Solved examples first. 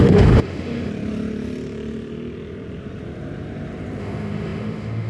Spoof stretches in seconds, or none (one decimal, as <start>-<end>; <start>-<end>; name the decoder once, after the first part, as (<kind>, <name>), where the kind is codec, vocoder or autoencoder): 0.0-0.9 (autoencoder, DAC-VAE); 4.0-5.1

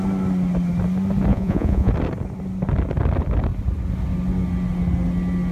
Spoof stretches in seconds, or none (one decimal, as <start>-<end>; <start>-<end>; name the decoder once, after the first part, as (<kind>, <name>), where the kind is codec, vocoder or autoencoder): 1.3-1.9 (vocoder, Vocos)

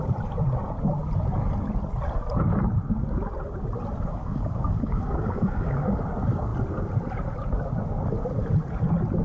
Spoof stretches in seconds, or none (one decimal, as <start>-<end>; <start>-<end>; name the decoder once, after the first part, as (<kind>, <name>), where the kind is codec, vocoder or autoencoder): 4.1-6.0 (codec, DAC)

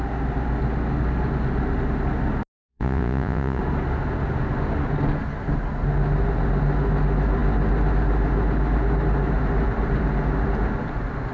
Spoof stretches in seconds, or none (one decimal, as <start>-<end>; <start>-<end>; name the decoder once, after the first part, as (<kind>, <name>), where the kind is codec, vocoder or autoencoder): 2.7-3.6 (vocoder, Vocos)